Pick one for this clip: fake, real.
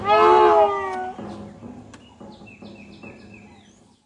real